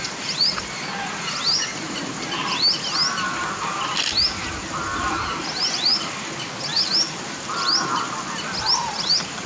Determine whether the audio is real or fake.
real